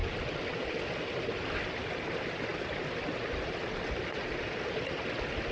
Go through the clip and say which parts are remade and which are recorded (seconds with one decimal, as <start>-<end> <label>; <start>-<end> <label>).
0.0-2.5 recorded; 2.5-4.0 remade; 4.0-5.5 recorded